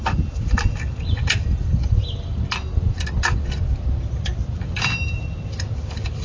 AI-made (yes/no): yes